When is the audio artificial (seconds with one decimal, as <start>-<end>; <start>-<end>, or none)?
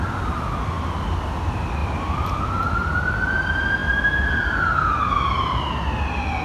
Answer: 0.0-1.0; 1.8-2.9; 3.8-5.6